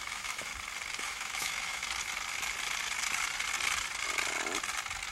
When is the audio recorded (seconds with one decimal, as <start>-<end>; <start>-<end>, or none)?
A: 0.5-1.0; 1.8-5.1